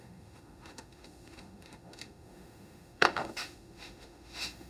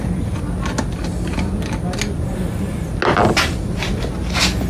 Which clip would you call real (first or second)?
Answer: second